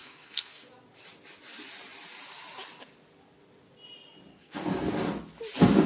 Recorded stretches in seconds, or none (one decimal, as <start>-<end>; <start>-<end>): 0.7-4.3; 4.9-5.9